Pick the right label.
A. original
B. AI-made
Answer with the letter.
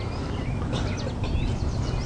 A